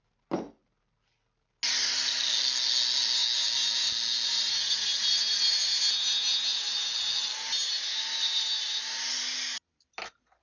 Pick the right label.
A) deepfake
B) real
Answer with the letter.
B